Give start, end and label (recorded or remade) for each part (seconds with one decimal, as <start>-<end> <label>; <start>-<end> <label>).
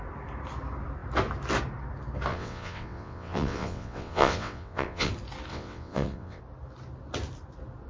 0.0-2.3 recorded; 2.3-5.1 remade; 5.1-5.5 recorded; 5.5-6.4 remade; 6.4-7.9 recorded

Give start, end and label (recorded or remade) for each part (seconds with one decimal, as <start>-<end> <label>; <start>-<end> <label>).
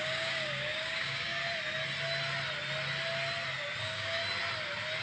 0.0-1.4 remade; 1.4-3.8 recorded; 3.8-4.2 remade; 4.2-5.0 recorded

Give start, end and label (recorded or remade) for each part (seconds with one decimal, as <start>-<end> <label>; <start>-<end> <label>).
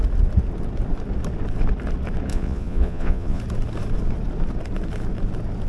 0.0-2.3 recorded; 2.3-3.4 remade; 3.4-5.7 recorded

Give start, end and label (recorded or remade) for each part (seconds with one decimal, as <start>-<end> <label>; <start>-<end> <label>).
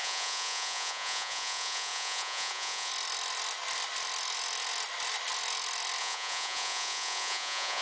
0.0-2.9 remade; 2.9-6.0 recorded; 6.0-7.8 remade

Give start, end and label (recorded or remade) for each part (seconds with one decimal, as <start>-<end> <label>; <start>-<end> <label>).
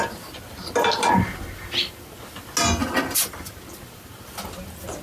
0.0-2.8 recorded; 2.8-3.5 remade; 3.5-5.0 recorded